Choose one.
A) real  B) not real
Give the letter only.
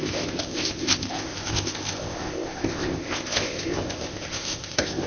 B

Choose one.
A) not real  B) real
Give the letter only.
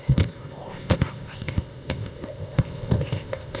A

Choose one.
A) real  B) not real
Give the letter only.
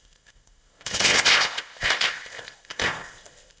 B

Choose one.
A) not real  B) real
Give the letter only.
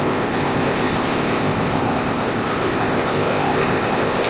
A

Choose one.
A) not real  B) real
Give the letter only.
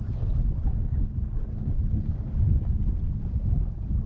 B